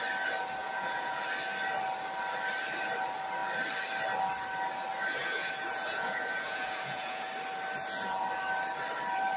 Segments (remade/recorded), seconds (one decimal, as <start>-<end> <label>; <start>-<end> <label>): 0.0-0.6 recorded; 0.6-1.2 remade; 1.2-5.2 recorded; 5.2-7.3 remade; 7.3-9.4 recorded